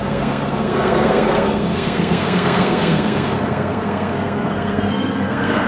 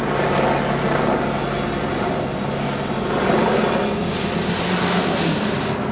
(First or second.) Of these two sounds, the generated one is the first